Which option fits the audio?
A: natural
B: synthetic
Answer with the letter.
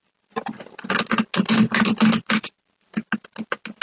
A